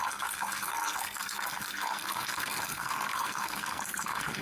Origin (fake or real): fake